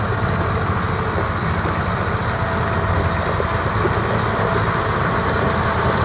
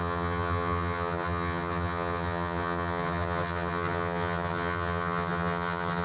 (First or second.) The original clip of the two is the first